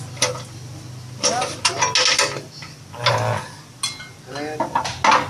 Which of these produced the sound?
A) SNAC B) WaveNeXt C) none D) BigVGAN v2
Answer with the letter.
C